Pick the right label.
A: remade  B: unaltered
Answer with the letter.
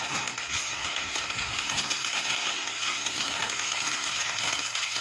A